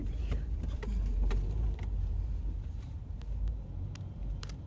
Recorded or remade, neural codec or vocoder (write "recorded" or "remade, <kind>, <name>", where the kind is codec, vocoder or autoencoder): remade, vocoder, BigVGAN v2